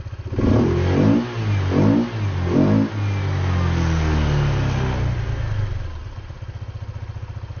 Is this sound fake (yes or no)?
no